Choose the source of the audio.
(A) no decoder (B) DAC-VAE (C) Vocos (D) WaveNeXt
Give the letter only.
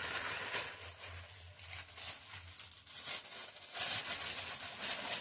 A